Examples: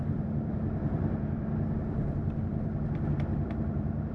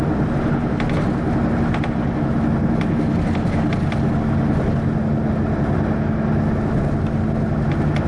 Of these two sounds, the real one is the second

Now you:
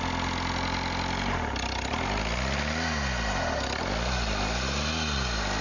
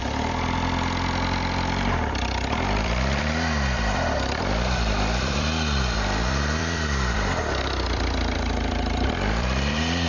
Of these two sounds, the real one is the first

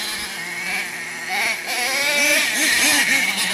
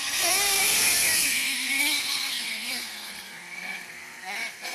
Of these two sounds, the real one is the first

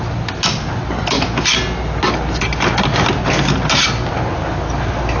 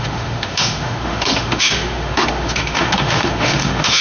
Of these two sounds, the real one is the first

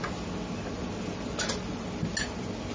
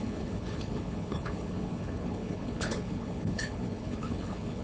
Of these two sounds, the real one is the first